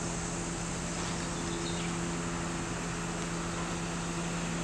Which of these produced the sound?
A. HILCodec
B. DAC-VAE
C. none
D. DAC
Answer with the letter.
C